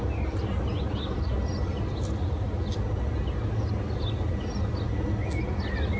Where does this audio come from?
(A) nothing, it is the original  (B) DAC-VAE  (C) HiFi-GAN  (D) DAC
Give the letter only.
A